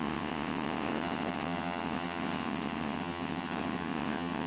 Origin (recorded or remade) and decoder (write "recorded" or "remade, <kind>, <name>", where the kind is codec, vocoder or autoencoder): remade, vocoder, WaveNeXt